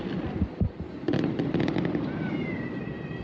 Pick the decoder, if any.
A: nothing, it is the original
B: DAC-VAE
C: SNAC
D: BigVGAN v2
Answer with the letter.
A